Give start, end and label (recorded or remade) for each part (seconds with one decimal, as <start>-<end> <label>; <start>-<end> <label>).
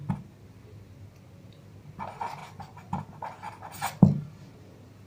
0.0-5.1 recorded